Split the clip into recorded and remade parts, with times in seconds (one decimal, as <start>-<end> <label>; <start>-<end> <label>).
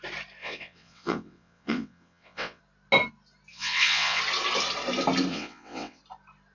0.0-0.4 recorded; 0.4-2.6 remade; 2.6-3.5 recorded; 3.5-4.2 remade; 4.2-5.3 recorded; 5.3-6.0 remade; 6.0-6.5 recorded